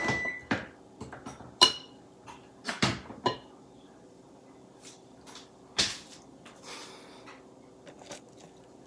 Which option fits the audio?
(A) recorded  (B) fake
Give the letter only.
A